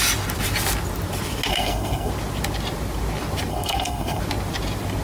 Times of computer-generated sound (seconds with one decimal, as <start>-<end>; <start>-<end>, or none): 1.5-2.1; 3.5-4.2